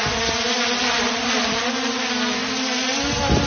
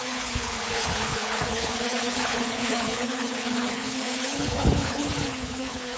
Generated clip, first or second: second